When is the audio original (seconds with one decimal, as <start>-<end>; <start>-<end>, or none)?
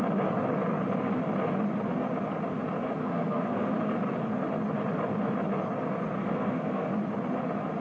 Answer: 0.0-3.0; 3.7-6.2; 6.9-7.8